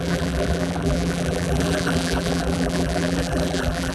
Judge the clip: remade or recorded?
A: remade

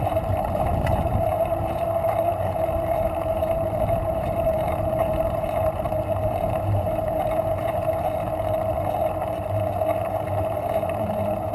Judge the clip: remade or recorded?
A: remade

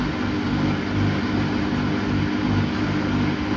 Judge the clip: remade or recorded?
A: recorded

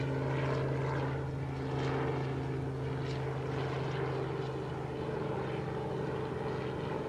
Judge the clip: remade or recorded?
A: recorded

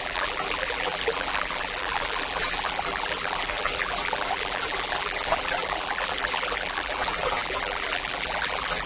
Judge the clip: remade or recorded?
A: remade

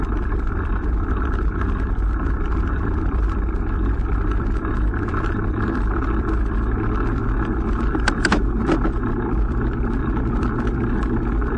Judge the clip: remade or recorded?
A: remade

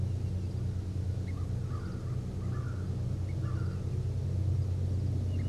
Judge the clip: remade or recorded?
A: recorded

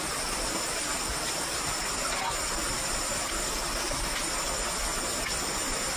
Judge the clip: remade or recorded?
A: recorded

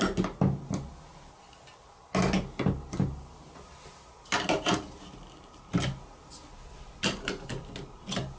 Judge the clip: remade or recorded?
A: recorded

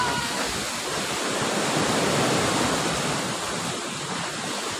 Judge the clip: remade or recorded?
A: recorded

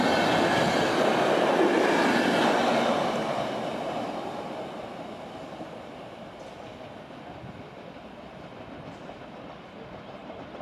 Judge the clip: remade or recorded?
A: recorded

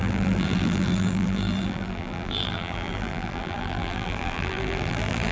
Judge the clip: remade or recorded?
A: remade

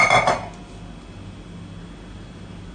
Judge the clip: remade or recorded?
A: recorded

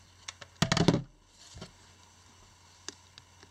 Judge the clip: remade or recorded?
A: recorded